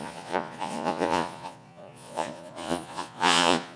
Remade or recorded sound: remade